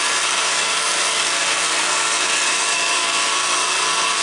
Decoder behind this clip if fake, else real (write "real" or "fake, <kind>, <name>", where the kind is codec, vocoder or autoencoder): fake, codec, SNAC